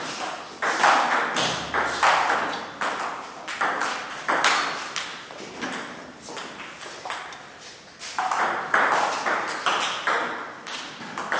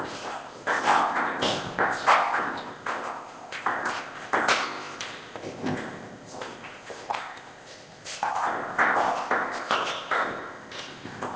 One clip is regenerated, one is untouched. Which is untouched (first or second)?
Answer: first